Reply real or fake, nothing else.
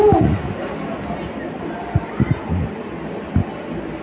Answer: real